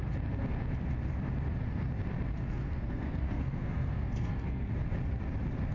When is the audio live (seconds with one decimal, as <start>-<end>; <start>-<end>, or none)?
0.0-2.5; 4.7-5.7